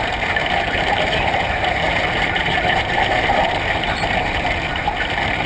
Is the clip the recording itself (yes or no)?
no